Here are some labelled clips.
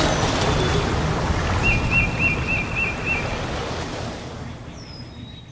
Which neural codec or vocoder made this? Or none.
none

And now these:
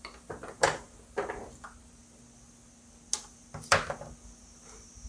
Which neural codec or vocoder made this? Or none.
none